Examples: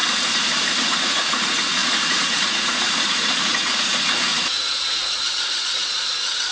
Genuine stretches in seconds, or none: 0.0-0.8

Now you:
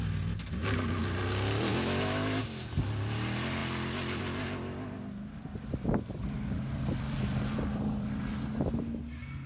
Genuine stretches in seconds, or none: 0.0-1.7; 2.4-9.5

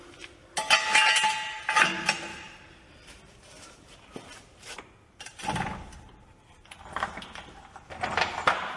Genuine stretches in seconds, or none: 0.0-2.3; 7.1-8.8